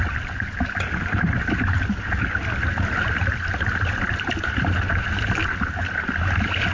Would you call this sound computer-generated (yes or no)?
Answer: no